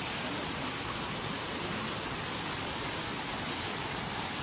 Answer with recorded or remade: recorded